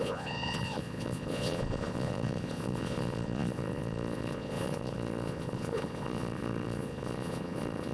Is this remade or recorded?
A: remade